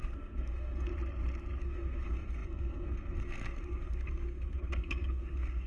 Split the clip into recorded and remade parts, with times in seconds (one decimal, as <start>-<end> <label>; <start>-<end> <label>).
0.0-0.9 remade; 0.9-1.6 recorded; 1.6-5.7 remade